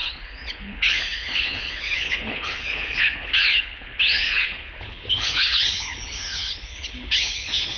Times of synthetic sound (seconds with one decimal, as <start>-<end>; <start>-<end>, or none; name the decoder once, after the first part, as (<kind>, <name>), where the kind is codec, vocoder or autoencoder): 0.0-7.8 (codec, HILCodec)